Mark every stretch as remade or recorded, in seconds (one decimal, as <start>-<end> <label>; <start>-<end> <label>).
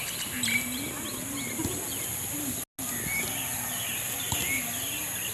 0.0-5.3 recorded